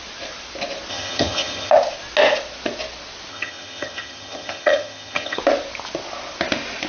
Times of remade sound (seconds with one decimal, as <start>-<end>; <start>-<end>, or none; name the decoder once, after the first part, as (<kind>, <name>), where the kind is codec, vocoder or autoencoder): 0.9-1.7 (vocoder, HiFi-GAN); 3.3-5.4